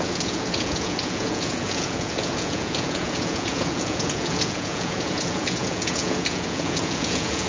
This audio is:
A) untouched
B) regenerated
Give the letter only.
B